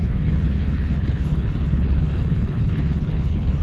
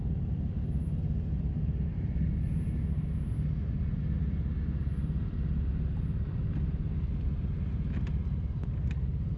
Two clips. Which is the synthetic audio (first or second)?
first